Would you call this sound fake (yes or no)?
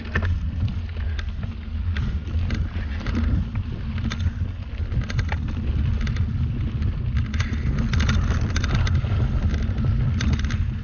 no